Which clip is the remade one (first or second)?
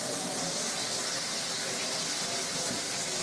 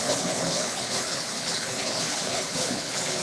second